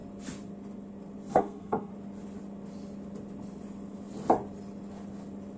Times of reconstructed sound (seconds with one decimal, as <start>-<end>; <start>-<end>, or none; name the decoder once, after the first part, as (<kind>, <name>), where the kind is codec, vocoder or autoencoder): 1.3-1.9 (codec, SNAC)